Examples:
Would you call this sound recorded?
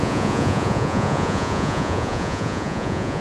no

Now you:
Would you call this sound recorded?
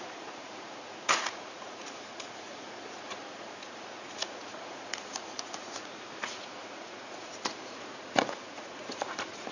no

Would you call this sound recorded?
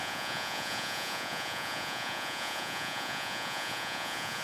no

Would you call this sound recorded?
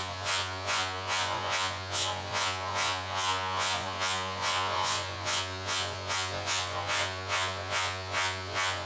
no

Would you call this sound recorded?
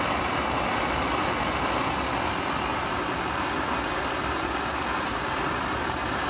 yes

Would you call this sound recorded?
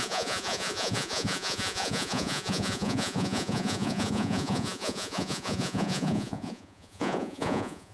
no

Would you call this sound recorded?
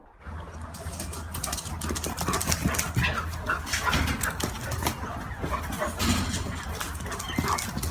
yes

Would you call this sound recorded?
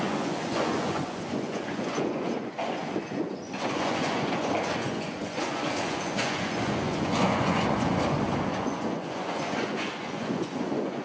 no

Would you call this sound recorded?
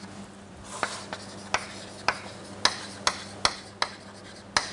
yes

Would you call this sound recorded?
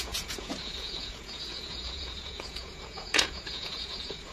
no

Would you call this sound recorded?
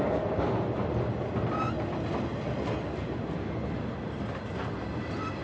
yes